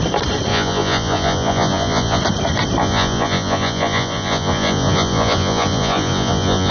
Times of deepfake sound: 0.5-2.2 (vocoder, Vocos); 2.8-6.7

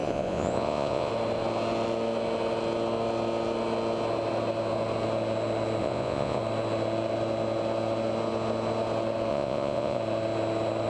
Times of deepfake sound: 0.0-1.1 (vocoder, Vocos); 5.8-6.4; 9.3-10.0

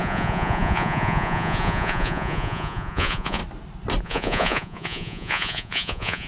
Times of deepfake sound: 0.0-3.4 (vocoder, Vocos); 4.0-6.3